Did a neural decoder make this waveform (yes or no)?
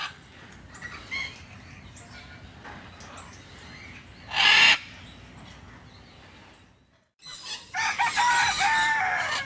no